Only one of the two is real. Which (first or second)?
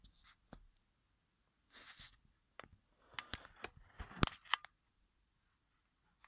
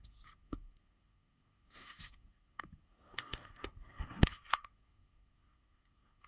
first